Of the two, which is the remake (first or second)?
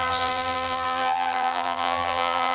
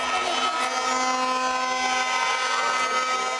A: first